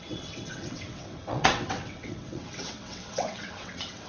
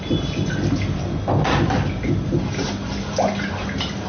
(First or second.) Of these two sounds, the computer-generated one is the first